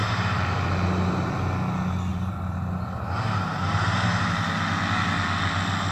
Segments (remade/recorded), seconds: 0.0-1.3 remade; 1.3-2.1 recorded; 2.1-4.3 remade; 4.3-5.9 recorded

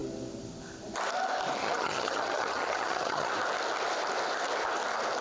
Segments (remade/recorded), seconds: 0.0-1.6 recorded; 1.6-3.3 remade; 3.3-5.2 recorded

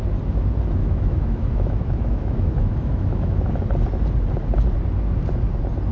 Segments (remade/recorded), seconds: 0.0-0.8 recorded; 0.8-3.5 remade; 3.5-5.9 recorded

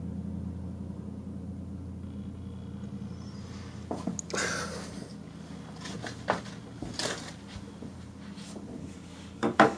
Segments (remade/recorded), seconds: 0.0-8.8 recorded; 8.8-9.8 remade